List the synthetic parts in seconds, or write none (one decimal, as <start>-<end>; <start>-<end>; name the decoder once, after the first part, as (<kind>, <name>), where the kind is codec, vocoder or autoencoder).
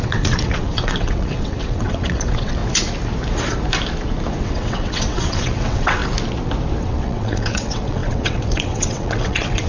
0.0-2.6 (vocoder, WaveNeXt); 4.4-6.0; 6.8-9.7